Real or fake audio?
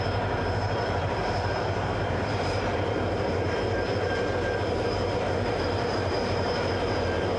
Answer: fake